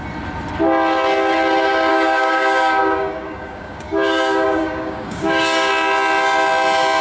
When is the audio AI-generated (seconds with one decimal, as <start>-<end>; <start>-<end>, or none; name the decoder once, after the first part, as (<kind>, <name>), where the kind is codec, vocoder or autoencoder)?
1.9-5.7 (codec, DAC)